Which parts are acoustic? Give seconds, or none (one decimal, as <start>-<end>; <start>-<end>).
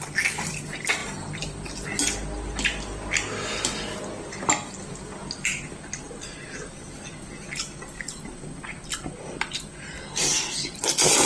0.0-11.3